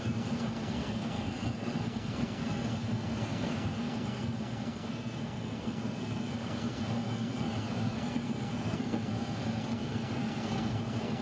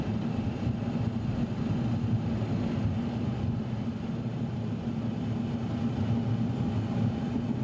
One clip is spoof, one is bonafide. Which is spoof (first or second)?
first